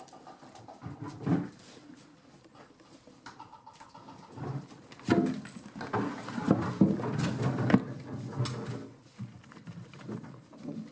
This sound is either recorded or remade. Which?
recorded